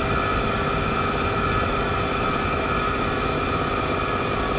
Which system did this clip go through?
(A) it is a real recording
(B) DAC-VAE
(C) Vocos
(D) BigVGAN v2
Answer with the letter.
A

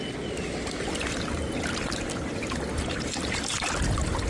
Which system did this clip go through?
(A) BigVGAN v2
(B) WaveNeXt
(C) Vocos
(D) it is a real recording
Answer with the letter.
D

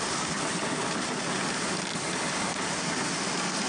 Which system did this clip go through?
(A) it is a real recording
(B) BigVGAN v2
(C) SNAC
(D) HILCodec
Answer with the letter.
A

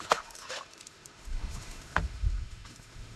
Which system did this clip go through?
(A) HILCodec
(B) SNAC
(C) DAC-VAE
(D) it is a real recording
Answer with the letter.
C